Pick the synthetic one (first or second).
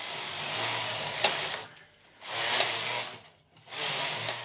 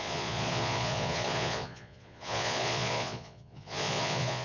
second